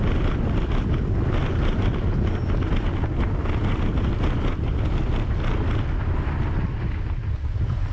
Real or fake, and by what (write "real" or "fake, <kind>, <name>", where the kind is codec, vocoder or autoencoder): real